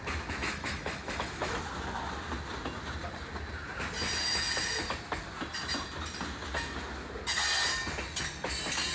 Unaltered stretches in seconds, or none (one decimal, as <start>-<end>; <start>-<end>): 0.0-0.4; 1.6-8.9